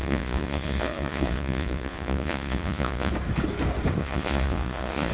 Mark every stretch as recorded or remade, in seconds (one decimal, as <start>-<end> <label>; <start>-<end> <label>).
0.0-3.1 remade; 3.1-4.0 recorded; 4.0-5.1 remade

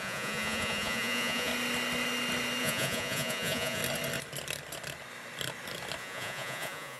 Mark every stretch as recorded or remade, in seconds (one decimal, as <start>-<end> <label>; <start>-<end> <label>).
0.0-1.5 remade; 1.5-2.6 recorded; 2.6-3.8 remade; 3.8-6.0 recorded; 6.0-7.0 remade

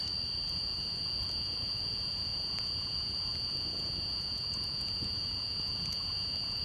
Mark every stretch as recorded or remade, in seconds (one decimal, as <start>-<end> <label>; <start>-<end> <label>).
0.0-0.5 recorded; 0.5-6.6 remade

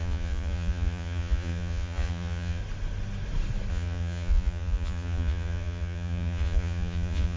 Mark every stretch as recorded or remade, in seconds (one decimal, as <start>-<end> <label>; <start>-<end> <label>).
0.0-2.6 remade; 2.6-3.7 recorded; 3.7-7.4 remade

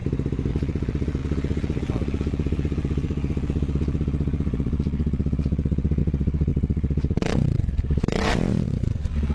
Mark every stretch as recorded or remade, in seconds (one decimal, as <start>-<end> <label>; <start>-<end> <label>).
0.0-0.5 recorded; 0.5-9.3 remade

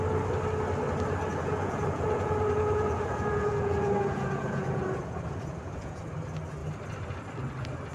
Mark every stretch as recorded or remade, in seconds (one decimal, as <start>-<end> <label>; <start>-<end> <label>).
0.0-1.3 recorded; 1.3-6.0 remade; 6.0-7.9 recorded

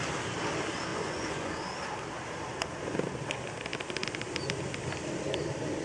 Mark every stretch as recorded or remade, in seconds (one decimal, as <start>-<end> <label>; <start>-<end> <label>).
0.0-0.9 recorded; 0.9-1.5 remade; 1.5-5.8 recorded

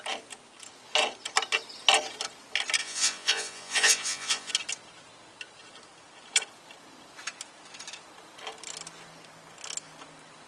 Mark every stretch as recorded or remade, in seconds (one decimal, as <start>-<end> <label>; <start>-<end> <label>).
0.0-2.8 recorded; 2.8-4.5 remade; 4.5-10.5 recorded